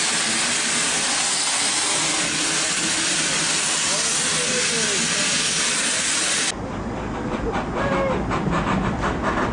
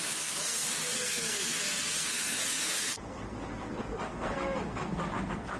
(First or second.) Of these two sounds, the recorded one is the first